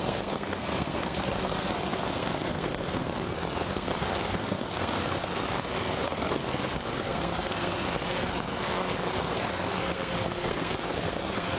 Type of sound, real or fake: fake